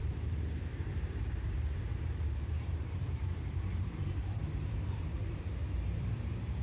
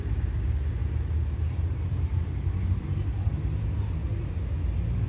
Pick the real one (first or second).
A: second